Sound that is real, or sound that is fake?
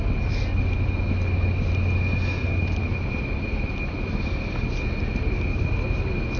real